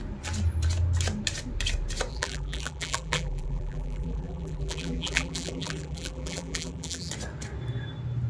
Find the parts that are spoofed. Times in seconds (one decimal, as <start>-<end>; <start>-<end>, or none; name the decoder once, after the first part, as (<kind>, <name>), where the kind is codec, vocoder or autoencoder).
2.1-7.1 (vocoder, BigVGAN v2)